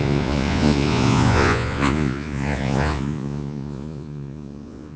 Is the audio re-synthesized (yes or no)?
yes